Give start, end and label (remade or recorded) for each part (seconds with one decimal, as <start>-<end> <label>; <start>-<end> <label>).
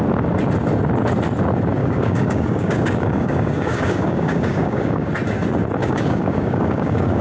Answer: 0.0-1.8 recorded; 1.8-5.1 remade; 5.1-5.8 recorded; 5.8-7.2 remade